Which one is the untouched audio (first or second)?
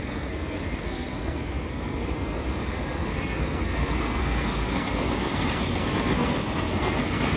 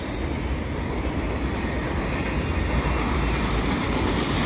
second